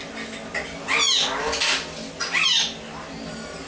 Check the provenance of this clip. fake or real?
real